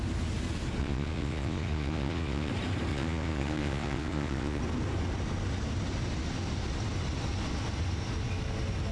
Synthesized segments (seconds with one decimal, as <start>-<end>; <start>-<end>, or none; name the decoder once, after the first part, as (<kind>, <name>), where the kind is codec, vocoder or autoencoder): 0.8-2.5 (vocoder, Vocos); 2.9-4.6